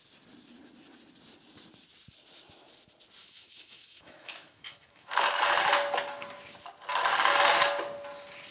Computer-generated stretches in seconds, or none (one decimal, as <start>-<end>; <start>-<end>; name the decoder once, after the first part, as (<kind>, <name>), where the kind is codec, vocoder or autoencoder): 3.2-5.4 (autoencoder, DAC-VAE)